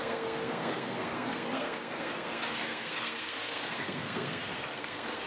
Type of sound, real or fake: fake